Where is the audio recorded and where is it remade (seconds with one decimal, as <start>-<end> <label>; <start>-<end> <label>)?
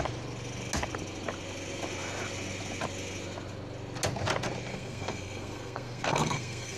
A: 0.0-4.7 recorded; 4.7-6.8 remade